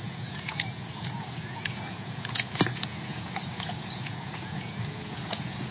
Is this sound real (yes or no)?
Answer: no